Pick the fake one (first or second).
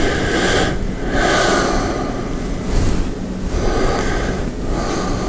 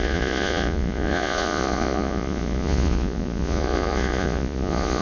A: second